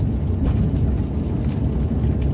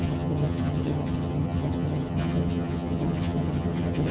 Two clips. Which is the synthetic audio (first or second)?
second